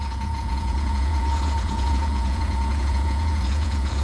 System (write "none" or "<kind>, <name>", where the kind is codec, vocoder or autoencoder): vocoder, Vocos